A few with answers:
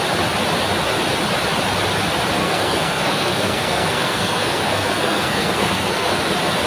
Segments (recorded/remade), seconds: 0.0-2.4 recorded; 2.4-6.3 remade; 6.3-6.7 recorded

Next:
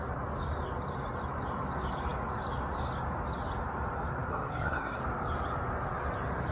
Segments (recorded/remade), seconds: 0.0-4.3 recorded; 4.3-5.0 remade; 5.0-6.5 recorded

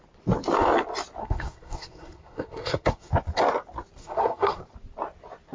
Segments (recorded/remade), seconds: 0.0-1.2 recorded; 1.2-3.1 remade; 3.1-4.0 recorded; 4.0-4.6 remade; 4.6-5.5 recorded

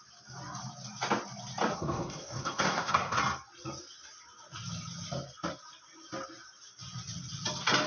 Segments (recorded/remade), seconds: 0.0-1.7 recorded; 1.7-3.2 remade; 3.2-7.9 recorded